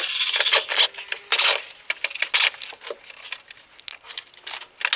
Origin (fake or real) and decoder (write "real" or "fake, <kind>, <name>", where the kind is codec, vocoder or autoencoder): real